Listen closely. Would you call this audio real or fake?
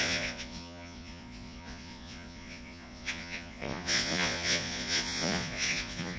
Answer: fake